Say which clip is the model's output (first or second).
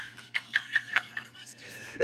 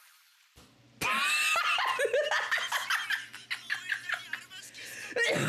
first